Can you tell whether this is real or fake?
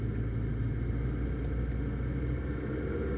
real